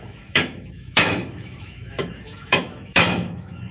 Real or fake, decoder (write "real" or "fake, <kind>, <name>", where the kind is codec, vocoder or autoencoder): fake, autoencoder, DAC-VAE